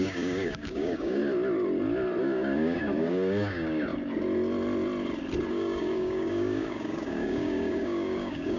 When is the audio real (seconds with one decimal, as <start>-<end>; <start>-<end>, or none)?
1.2-2.2; 3.9-5.5